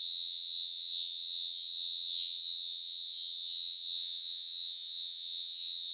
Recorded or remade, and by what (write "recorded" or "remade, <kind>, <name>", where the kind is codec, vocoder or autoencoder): remade, vocoder, WaveNeXt